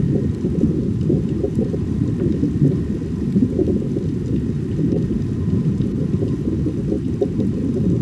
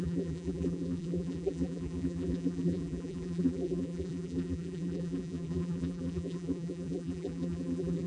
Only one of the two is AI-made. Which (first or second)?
second